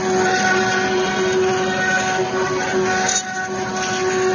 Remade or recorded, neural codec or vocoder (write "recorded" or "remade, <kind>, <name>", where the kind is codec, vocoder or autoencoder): recorded